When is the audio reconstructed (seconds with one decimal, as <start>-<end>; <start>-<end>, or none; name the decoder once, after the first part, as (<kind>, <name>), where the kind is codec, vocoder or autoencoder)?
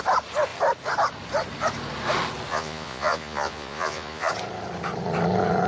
2.5-4.3 (vocoder, Vocos)